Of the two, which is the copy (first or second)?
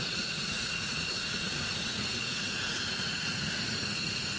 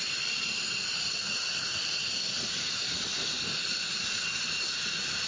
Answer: first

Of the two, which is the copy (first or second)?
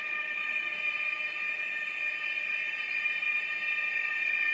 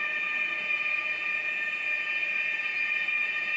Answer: second